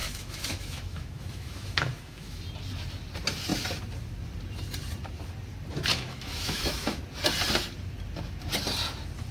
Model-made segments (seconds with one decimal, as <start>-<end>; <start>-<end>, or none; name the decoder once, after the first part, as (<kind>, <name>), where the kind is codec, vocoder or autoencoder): 0.0-2.4 (autoencoder, DAC-VAE); 5.9-7.0